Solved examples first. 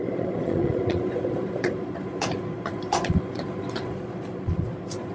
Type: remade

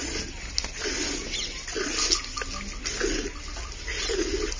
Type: recorded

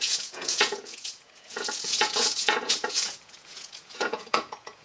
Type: remade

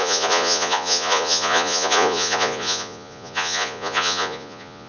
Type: remade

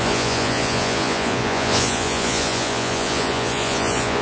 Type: remade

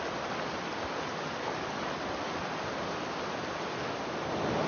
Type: recorded